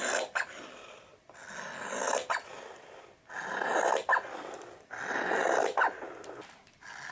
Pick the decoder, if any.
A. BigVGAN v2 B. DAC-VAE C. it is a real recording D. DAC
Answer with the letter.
C